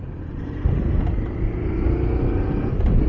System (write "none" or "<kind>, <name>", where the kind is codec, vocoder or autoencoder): none